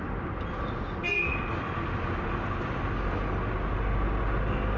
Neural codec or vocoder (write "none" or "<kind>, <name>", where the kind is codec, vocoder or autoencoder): none